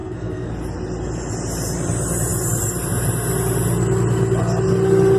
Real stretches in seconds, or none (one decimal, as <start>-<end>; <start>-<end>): 0.5-5.2